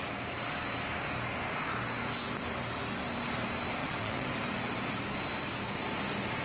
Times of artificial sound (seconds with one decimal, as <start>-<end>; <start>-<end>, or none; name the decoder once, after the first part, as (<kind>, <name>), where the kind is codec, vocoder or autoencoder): 3.8-4.3 (vocoder, WaveNeXt)